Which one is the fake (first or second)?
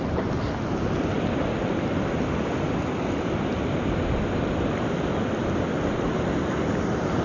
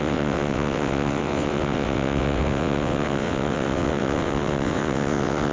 second